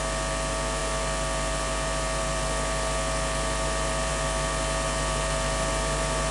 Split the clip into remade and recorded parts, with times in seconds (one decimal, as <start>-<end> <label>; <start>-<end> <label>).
0.0-6.3 remade